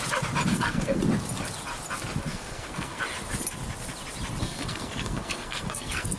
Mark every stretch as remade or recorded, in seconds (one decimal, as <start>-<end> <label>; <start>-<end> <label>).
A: 0.0-0.5 recorded; 0.5-1.0 remade; 1.0-2.3 recorded; 2.3-3.0 remade; 3.0-4.4 recorded; 4.4-6.2 remade